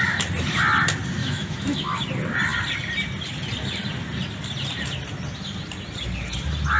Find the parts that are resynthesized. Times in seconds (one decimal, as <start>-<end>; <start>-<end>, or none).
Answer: 1.2-2.0